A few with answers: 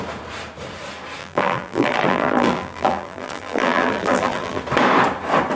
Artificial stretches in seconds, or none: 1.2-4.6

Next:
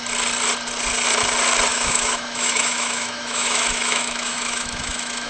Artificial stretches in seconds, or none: 1.7-5.3

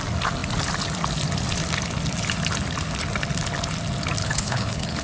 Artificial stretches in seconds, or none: 4.2-5.0

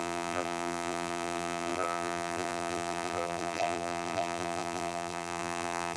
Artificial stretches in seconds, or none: 0.0-6.0

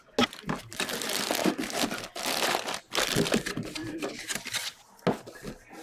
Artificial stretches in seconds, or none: 1.4-3.3; 3.8-4.3

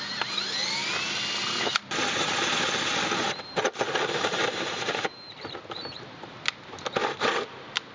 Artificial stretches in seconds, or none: 3.2-6.4